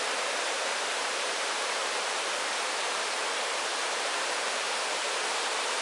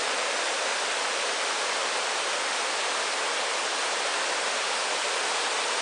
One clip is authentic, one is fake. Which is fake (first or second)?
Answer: first